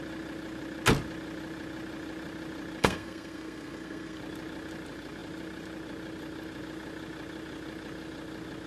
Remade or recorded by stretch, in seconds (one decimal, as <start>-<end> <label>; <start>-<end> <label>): 0.0-2.8 recorded; 2.8-4.2 remade; 4.2-8.7 recorded